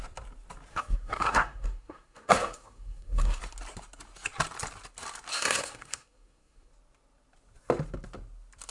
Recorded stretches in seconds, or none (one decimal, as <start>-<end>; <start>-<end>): 0.0-0.7; 3.4-5.3; 6.7-8.7